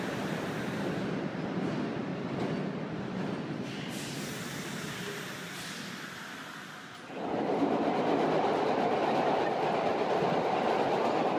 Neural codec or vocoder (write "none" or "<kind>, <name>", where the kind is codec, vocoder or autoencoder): none